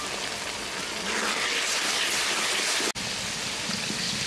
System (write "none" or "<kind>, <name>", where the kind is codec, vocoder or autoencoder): none